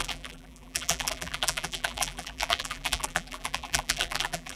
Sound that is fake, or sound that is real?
fake